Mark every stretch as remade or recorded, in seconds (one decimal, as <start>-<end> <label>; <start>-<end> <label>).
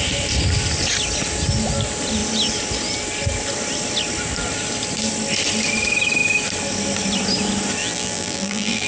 0.0-7.8 recorded; 7.8-8.9 remade